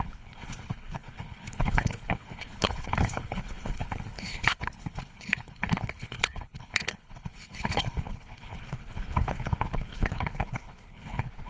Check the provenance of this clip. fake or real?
fake